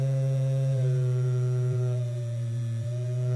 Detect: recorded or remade remade